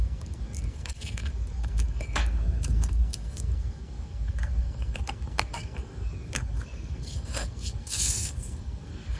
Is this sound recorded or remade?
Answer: remade